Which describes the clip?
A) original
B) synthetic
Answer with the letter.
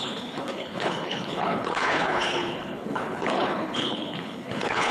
B